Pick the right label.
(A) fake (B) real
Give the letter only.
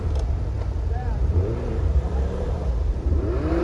A